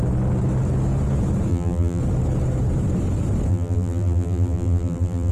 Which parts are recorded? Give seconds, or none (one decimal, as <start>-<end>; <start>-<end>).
0.0-1.5; 2.0-3.5